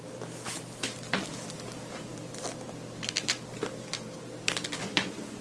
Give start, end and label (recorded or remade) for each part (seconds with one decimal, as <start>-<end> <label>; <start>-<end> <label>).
0.0-4.8 recorded; 4.8-5.4 remade